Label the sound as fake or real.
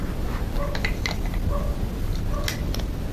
real